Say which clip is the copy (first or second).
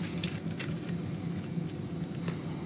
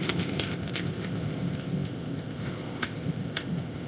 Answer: second